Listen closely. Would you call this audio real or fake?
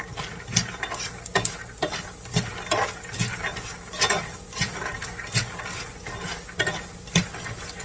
real